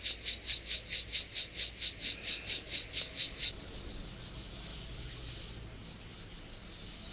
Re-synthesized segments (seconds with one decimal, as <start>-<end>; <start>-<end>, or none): none